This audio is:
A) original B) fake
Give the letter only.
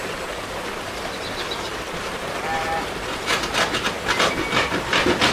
A